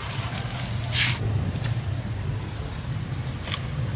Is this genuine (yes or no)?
yes